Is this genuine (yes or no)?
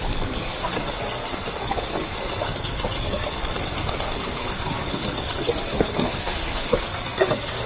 no